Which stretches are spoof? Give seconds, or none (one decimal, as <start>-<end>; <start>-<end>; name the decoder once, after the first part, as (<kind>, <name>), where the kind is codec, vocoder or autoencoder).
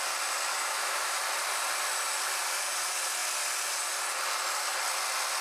0.5-1.2 (autoencoder, DAC-VAE)